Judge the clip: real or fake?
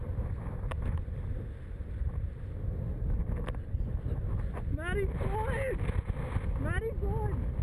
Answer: real